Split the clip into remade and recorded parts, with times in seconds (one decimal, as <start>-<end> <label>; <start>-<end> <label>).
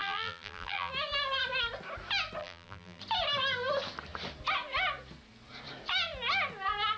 0.0-0.9 remade; 0.9-2.4 recorded; 2.4-3.0 remade; 3.0-7.0 recorded